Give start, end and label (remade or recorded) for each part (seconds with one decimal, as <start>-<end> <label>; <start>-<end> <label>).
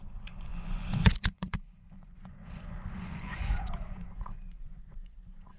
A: 0.0-5.6 remade